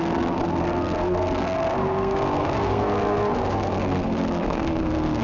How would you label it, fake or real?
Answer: fake